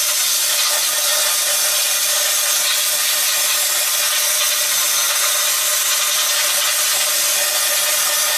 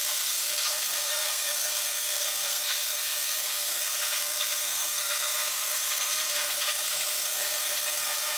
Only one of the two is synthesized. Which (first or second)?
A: second